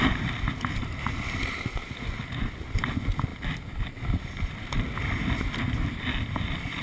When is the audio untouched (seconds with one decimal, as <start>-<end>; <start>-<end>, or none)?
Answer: 0.0-6.8